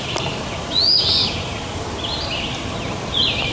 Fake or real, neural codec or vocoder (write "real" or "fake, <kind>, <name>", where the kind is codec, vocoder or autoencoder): real